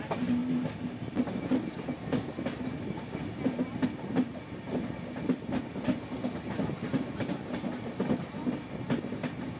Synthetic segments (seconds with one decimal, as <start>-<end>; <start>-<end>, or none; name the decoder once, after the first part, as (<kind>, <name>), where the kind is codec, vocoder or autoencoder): none